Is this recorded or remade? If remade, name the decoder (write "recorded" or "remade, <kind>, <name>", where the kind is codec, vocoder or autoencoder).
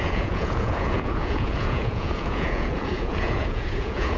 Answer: remade, vocoder, Vocos